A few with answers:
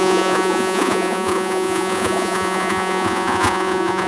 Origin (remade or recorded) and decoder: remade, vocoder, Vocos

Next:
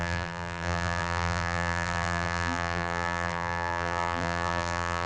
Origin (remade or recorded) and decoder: remade, vocoder, BigVGAN v2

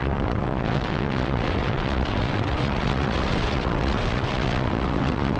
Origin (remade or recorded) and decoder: remade, vocoder, WaveNeXt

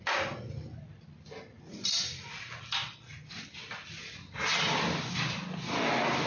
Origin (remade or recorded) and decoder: recorded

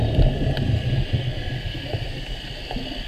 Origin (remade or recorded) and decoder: recorded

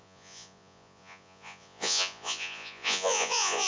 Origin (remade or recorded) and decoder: remade, vocoder, Vocos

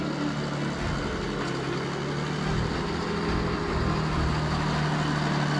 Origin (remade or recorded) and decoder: recorded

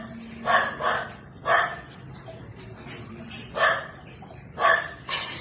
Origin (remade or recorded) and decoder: recorded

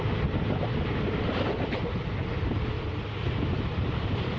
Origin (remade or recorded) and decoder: recorded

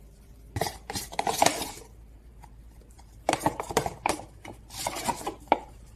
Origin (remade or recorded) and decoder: remade, vocoder, BigVGAN v2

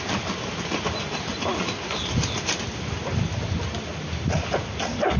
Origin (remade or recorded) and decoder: recorded